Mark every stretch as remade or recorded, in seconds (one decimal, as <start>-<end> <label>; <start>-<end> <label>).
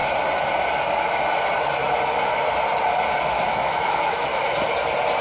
0.0-3.1 recorded; 3.1-4.3 remade; 4.3-5.2 recorded